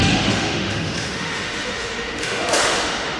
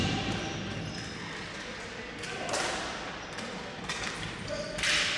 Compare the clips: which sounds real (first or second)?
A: second